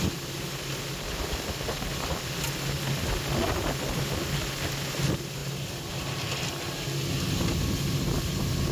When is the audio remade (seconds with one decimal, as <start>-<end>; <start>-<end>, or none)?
none